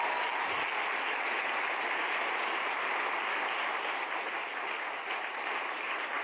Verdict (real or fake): real